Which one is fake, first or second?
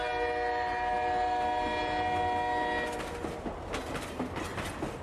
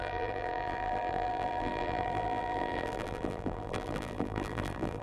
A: second